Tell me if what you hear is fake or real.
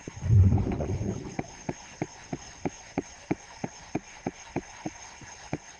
fake